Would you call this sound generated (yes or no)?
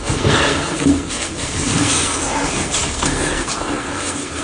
yes